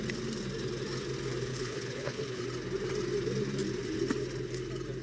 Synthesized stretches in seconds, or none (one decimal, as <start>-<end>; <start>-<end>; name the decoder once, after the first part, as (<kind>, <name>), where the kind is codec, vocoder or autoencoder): 1.5-2.4 (codec, HILCodec)